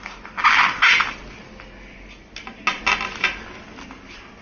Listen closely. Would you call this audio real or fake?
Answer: real